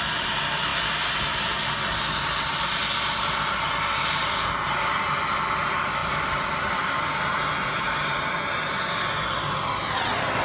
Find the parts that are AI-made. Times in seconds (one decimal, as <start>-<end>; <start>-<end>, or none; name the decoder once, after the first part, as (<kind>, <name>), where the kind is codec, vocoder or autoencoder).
6.0-7.5 (vocoder, BigVGAN v2)